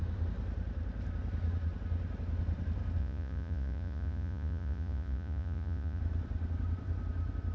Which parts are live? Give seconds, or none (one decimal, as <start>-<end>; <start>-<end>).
0.0-3.0; 6.0-7.5